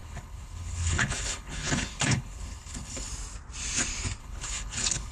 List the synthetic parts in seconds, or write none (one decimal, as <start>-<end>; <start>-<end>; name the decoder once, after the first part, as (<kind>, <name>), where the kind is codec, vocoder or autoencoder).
0.0-3.1 (codec, HILCodec); 4.2-5.1